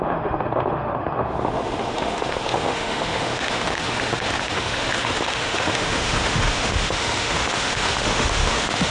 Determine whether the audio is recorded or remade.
remade